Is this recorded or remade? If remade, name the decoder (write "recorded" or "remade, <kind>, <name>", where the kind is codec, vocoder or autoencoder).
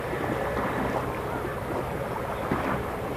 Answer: recorded